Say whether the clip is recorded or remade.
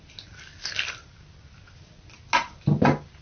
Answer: recorded